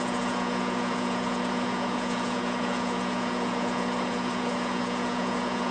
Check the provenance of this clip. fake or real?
fake